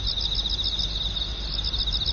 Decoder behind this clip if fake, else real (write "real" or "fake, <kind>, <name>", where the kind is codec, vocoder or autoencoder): real